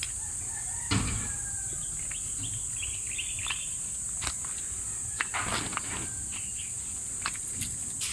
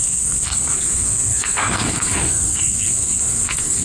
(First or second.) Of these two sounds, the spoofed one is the second